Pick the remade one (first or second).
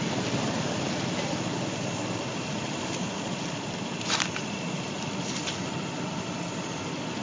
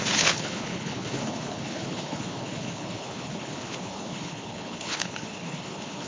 second